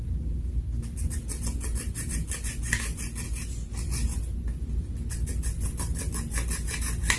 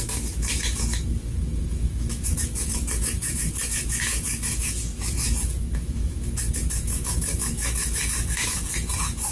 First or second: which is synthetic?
second